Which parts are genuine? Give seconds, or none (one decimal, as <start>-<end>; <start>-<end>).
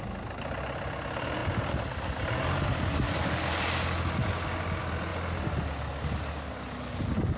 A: 0.0-7.4